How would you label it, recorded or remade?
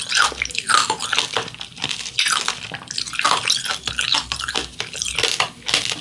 recorded